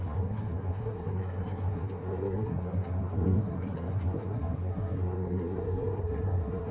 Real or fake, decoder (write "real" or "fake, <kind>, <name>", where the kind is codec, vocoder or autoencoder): fake, codec, SNAC